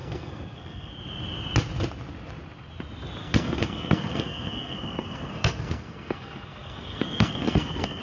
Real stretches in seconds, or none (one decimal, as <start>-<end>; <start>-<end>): 0.9-3.2